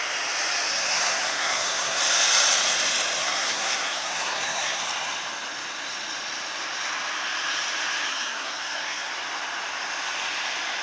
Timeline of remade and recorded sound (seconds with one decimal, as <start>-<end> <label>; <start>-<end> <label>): 0.0-0.7 recorded; 0.7-2.0 remade; 2.0-3.2 recorded; 3.2-4.8 remade; 4.8-8.1 recorded; 8.1-9.1 remade; 9.1-10.8 recorded